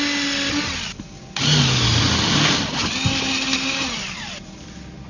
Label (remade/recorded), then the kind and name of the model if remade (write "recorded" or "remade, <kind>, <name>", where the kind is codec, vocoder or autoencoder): recorded